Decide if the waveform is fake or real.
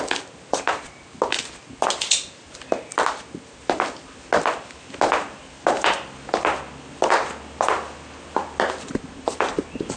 real